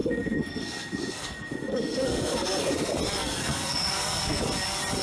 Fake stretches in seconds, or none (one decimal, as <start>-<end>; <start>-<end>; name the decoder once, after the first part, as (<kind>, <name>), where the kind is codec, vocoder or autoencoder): 0.0-2.7 (codec, SNAC); 3.2-4.4